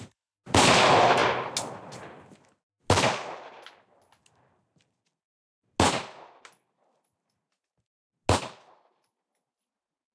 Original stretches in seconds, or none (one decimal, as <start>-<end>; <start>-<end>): 0.0-10.1